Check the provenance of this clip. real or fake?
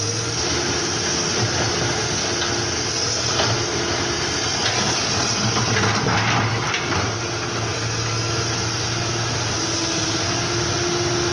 real